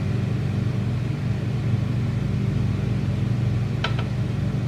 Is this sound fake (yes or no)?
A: no